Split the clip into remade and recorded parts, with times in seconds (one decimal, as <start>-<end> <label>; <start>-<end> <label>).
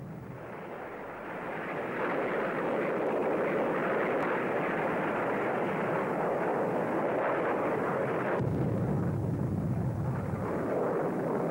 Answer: 0.0-11.5 recorded